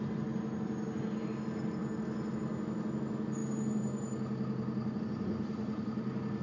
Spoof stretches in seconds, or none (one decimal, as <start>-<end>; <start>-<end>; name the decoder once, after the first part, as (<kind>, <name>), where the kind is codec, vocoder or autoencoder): none